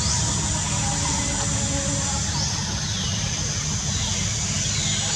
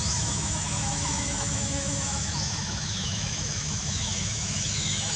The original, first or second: first